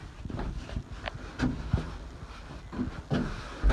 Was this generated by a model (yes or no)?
no